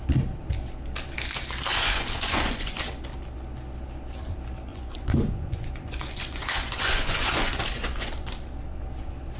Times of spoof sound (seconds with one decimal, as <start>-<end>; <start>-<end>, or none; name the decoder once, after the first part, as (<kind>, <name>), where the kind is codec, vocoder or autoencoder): 1.7-2.8 (vocoder, Vocos); 4.7-8.1